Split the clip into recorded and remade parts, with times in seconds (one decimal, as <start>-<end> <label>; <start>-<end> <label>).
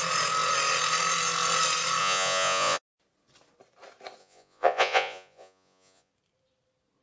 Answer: 0.0-2.0 recorded; 2.0-2.8 remade; 2.8-4.2 recorded; 4.2-6.1 remade; 6.1-7.0 recorded